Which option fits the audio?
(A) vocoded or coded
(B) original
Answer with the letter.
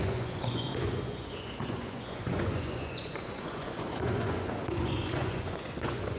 A